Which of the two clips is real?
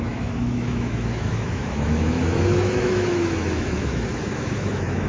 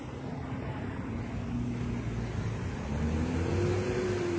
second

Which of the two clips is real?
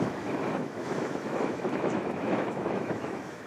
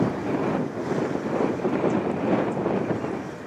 second